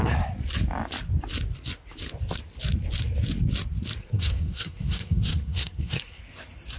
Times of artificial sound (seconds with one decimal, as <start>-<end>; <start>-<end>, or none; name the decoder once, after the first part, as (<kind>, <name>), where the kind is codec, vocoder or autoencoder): 4.0-6.2 (codec, SNAC)